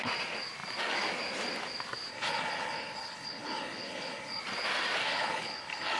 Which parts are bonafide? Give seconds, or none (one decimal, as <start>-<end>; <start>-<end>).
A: 0.0-2.1; 4.4-5.0